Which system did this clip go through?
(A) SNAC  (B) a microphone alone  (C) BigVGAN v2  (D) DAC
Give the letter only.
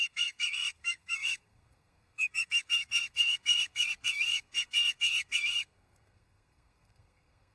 A